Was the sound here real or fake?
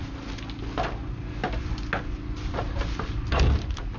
real